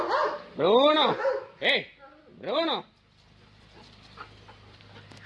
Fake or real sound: real